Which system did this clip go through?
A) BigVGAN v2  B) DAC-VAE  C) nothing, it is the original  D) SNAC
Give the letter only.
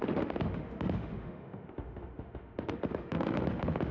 B